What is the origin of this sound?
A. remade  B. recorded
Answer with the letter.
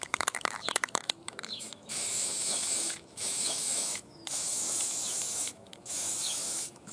A